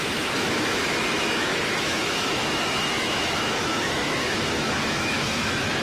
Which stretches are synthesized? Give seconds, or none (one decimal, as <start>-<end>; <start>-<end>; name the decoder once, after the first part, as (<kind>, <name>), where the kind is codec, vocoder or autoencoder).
0.0-5.8 (autoencoder, DAC-VAE)